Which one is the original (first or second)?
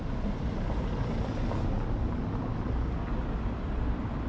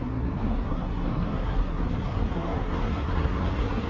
first